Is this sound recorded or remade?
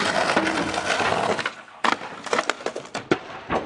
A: recorded